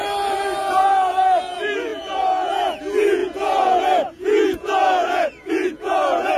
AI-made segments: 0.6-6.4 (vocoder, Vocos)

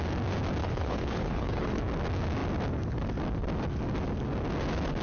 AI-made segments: 0.6-1.8 (codec, HILCodec)

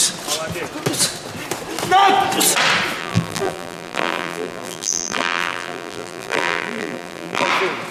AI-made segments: 3.0-7.5 (vocoder, BigVGAN v2)

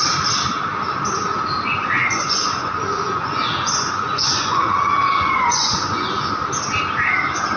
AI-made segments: 1.7-6.3 (vocoder, Vocos)

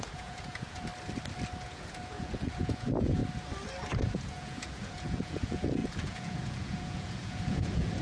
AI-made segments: 0.0-0.9 (vocoder, Vocos); 1.6-3.2; 4.1-8.0